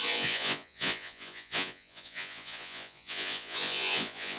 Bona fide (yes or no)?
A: no